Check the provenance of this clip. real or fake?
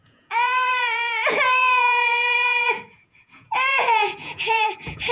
fake